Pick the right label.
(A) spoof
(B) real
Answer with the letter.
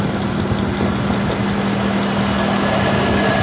B